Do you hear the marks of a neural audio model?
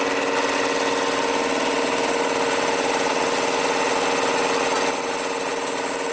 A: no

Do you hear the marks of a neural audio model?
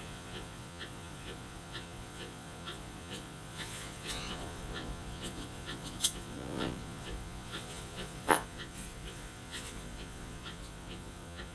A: yes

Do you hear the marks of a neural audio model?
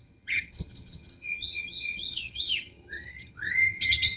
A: yes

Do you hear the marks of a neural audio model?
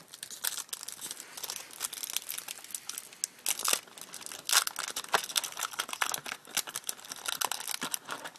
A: no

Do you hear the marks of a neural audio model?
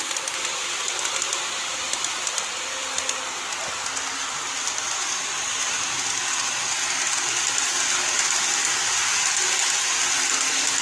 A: no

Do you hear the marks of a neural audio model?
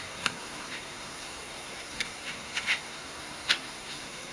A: yes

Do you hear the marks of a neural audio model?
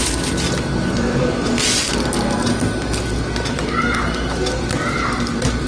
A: no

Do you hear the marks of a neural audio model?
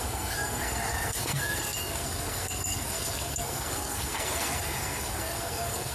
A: yes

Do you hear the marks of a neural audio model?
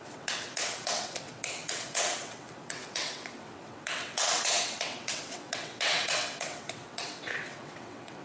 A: yes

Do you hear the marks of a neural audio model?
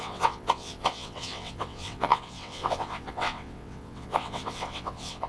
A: yes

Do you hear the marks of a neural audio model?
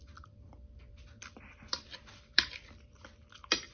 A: yes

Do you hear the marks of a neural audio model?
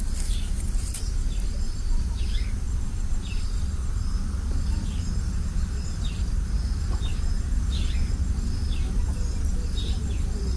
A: yes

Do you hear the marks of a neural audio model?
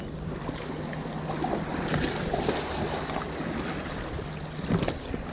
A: no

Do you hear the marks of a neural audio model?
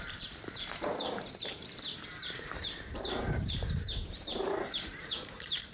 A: yes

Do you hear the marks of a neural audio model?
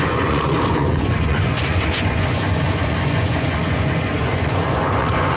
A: yes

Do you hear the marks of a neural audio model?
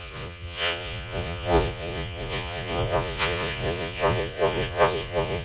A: yes